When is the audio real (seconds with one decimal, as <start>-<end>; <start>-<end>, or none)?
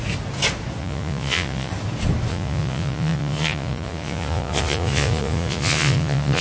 0.0-0.8; 1.7-2.3